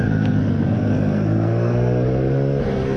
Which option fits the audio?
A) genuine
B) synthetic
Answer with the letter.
B